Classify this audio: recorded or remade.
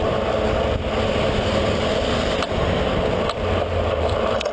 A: recorded